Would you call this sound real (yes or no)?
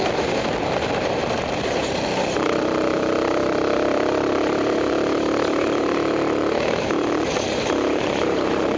no